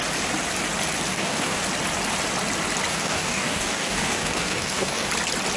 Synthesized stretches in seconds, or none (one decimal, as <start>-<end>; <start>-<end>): 1.1-1.6; 2.9-5.1